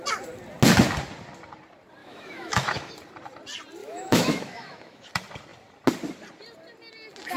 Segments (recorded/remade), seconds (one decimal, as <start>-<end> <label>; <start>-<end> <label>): 0.0-2.0 recorded; 2.0-2.9 remade; 2.9-3.8 recorded; 3.8-5.1 remade; 5.1-7.4 recorded